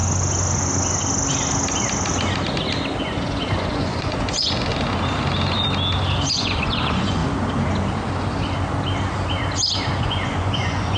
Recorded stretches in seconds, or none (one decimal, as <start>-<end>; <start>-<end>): 0.0-3.0; 4.7-6.3; 7.2-10.0